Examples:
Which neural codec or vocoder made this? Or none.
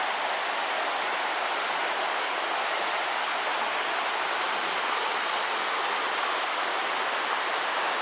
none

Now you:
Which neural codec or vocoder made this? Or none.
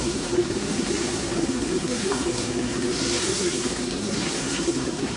codec, SNAC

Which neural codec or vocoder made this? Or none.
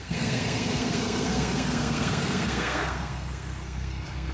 codec, SNAC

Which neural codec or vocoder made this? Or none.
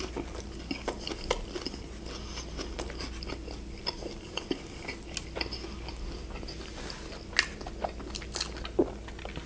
none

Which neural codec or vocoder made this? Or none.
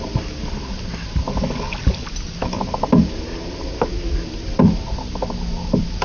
none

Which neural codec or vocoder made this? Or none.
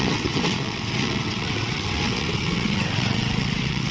vocoder, WaveNeXt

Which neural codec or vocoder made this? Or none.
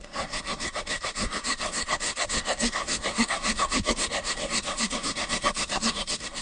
codec, SNAC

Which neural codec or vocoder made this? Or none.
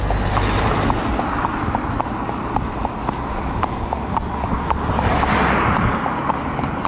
none